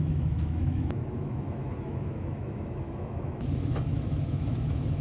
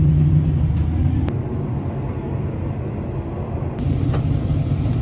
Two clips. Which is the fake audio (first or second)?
first